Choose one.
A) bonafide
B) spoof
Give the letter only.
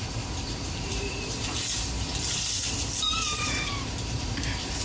B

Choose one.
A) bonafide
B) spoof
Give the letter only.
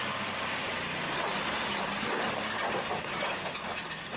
A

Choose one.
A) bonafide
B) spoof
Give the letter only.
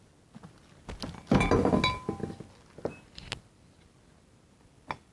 A